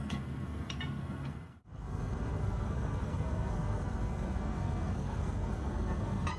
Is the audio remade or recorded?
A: remade